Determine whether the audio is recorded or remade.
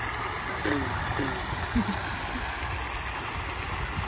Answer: recorded